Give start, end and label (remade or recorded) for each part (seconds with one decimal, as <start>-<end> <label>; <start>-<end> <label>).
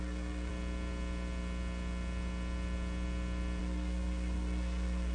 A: 0.0-0.5 remade; 0.5-3.6 recorded; 3.6-5.1 remade